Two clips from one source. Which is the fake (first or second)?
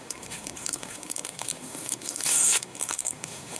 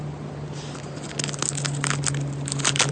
first